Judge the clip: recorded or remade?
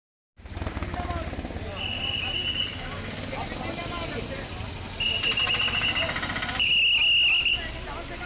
recorded